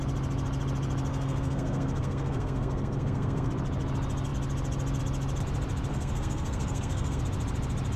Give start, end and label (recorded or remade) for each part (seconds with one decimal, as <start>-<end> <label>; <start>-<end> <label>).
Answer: 0.0-1.1 recorded; 1.1-3.5 remade; 3.5-5.9 recorded; 5.9-7.2 remade; 7.2-8.0 recorded